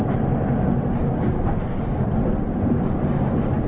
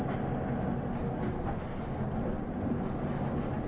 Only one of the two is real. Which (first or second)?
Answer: second